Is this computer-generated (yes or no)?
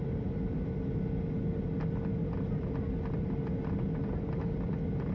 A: no